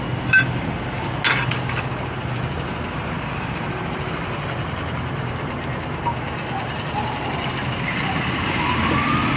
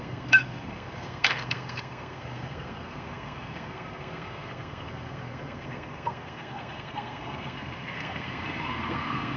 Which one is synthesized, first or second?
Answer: second